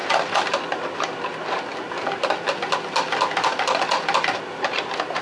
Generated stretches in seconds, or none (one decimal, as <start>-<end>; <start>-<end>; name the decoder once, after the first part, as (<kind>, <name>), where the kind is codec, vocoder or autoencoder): none